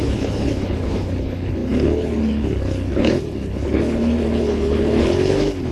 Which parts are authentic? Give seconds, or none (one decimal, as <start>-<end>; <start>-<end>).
none